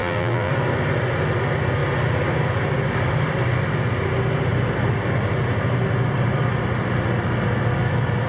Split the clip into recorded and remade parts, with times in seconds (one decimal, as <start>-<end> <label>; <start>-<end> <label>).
0.0-0.5 remade; 0.5-8.3 recorded